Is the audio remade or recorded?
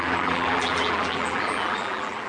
remade